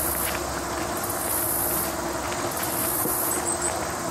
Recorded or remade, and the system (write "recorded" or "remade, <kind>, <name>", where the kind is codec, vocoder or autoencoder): recorded